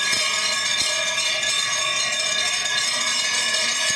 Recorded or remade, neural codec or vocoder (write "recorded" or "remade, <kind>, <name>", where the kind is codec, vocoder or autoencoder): remade, vocoder, Vocos